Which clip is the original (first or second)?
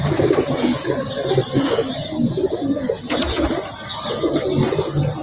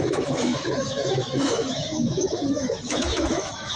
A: first